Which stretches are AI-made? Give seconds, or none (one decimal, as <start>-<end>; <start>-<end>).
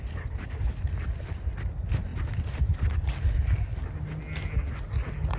none